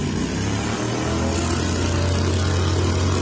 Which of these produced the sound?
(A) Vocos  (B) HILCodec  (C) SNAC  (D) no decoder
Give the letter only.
D